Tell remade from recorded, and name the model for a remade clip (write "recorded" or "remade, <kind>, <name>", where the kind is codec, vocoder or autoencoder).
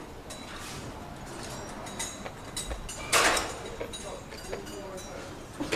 recorded